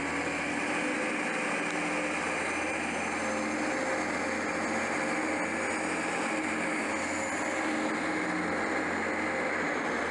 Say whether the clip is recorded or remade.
recorded